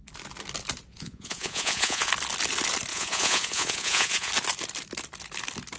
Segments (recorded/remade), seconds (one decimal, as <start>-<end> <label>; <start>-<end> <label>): 0.0-0.9 recorded; 0.9-2.1 remade; 2.1-2.9 recorded; 2.9-4.3 remade; 4.3-5.8 recorded